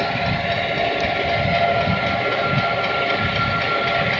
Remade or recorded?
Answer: recorded